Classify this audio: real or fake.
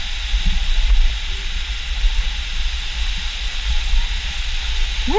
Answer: real